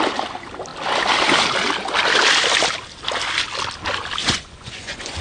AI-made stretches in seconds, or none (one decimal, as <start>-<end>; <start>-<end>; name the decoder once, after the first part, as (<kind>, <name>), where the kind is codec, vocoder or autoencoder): 4.2-5.2 (vocoder, Vocos)